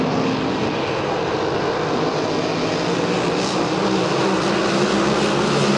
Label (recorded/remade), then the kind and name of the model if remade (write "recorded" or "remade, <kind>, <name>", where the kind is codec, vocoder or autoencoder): recorded